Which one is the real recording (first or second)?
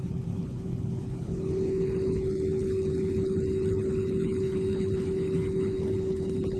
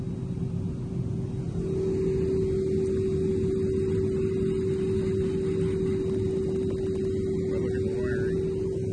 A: second